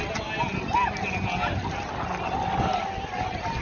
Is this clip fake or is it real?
real